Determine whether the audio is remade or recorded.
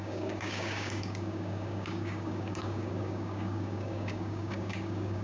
remade